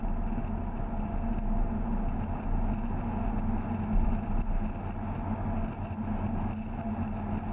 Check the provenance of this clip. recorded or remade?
recorded